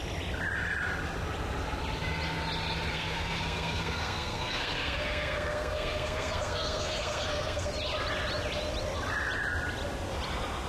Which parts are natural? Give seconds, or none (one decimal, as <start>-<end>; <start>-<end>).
0.0-2.9; 7.7-10.7